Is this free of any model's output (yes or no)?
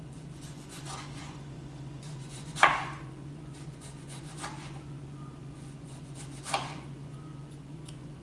no